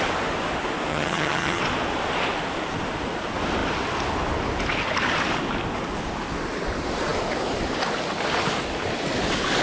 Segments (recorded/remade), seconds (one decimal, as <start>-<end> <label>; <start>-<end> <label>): 0.0-0.9 recorded; 0.9-1.6 remade; 1.6-9.6 recorded